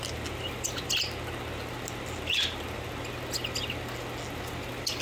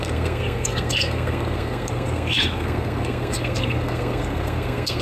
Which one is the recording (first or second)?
first